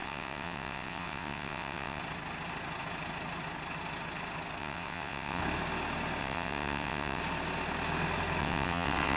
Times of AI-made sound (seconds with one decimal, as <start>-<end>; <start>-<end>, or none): 0.0-2.0; 4.6-5.4; 6.2-7.2; 8.4-9.2